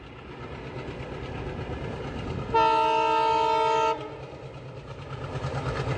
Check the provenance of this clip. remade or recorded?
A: recorded